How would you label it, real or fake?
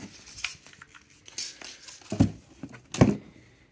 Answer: real